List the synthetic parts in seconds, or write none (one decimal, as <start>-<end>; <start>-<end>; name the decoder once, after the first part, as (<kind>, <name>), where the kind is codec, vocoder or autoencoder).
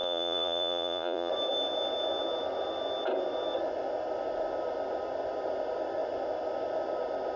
0.0-1.3 (vocoder, Vocos)